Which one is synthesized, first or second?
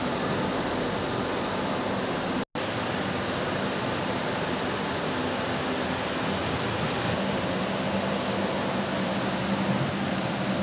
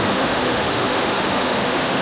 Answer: second